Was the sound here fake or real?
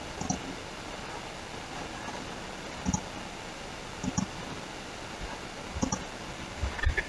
real